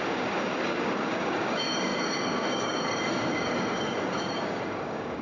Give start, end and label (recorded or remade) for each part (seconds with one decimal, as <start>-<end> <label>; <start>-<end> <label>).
0.0-5.2 remade